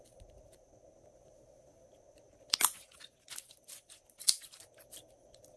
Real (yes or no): yes